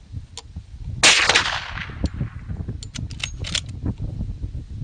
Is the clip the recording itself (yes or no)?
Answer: yes